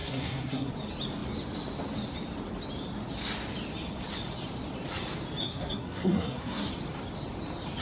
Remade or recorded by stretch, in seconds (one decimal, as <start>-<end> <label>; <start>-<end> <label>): 0.0-0.7 remade; 0.7-5.4 recorded; 5.4-6.7 remade; 6.7-7.8 recorded